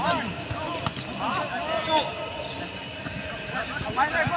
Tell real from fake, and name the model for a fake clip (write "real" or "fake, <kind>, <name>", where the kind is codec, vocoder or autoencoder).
real